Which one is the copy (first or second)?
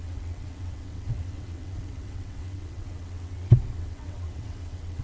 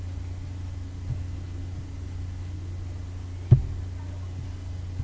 first